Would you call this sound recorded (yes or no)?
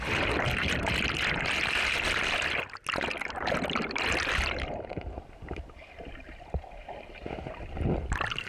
yes